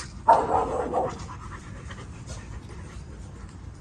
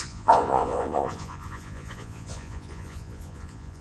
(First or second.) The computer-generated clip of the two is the second